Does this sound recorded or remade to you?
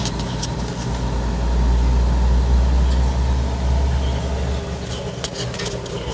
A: recorded